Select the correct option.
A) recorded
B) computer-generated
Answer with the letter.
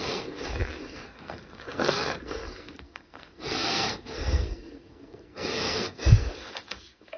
B